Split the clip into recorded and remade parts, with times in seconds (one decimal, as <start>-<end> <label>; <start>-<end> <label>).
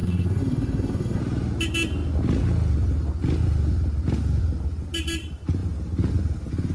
0.0-1.2 remade; 1.2-6.7 recorded